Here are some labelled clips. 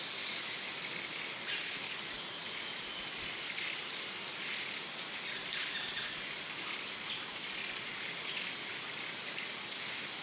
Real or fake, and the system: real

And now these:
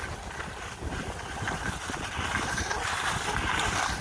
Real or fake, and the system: real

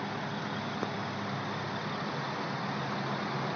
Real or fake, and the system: real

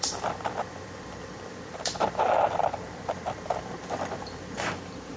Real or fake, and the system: fake, vocoder, BigVGAN v2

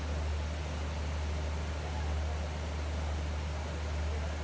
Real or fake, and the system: real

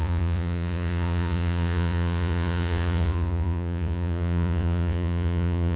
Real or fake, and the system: fake, vocoder, Vocos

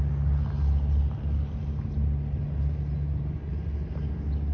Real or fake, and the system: real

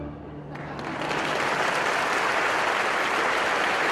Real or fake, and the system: real